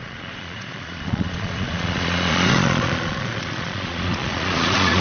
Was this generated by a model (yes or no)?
yes